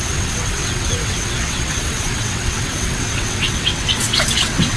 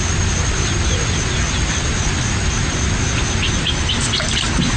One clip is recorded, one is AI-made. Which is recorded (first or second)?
second